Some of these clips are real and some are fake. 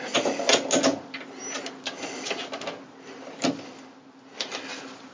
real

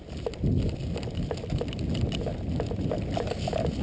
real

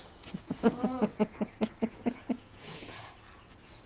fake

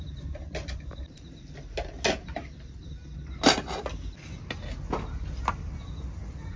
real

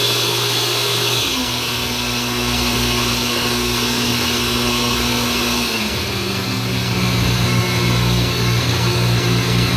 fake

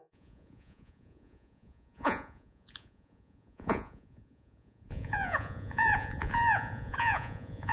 fake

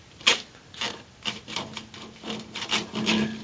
fake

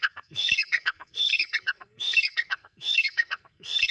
fake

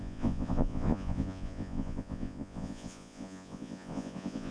fake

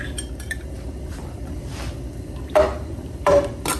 fake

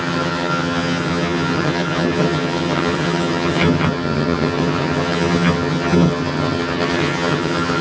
fake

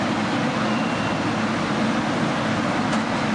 real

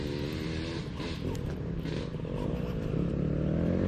real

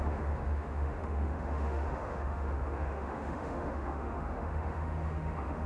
fake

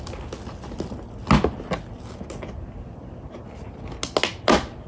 real